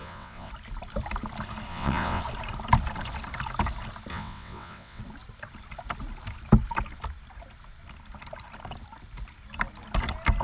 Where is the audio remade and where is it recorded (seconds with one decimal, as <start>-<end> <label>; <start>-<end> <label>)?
0.0-0.5 remade; 0.5-1.7 recorded; 1.7-2.2 remade; 2.2-4.1 recorded; 4.1-5.0 remade; 5.0-10.4 recorded